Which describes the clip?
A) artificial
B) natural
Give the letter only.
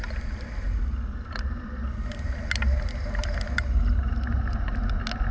B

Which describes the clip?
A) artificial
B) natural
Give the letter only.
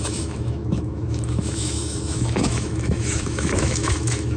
A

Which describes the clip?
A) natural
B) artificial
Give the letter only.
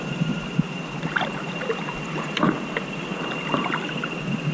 A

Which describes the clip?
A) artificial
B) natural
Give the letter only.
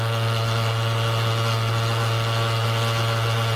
B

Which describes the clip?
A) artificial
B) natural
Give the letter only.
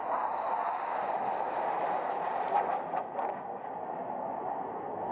B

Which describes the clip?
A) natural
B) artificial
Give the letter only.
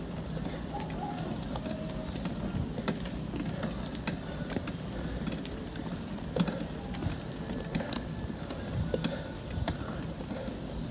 A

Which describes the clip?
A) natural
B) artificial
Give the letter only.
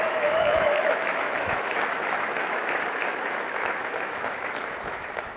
B